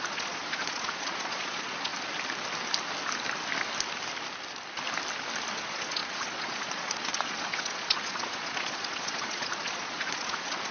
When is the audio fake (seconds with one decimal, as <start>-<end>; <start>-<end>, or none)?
0.0-1.9; 5.5-10.7